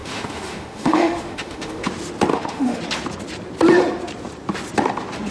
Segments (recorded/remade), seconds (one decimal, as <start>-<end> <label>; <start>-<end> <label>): 0.0-1.9 remade; 1.9-2.3 recorded; 2.3-2.8 remade; 2.8-5.3 recorded